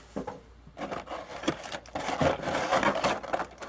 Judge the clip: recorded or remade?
recorded